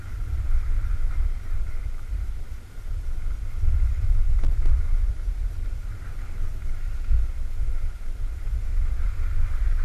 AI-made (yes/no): no